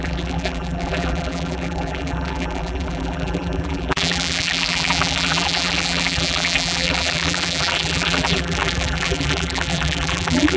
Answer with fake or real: fake